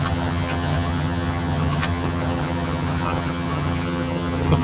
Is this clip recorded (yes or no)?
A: no